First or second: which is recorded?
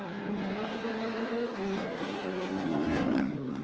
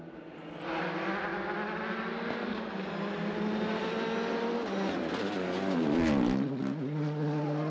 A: second